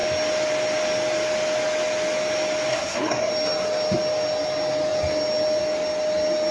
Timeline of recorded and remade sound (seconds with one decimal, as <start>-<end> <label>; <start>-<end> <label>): 0.0-2.7 recorded; 2.7-3.3 remade; 3.3-6.5 recorded